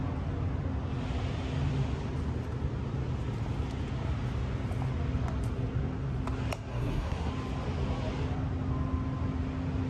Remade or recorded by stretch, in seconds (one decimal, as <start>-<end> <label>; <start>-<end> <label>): 0.0-6.7 recorded; 6.7-7.3 remade; 7.3-9.9 recorded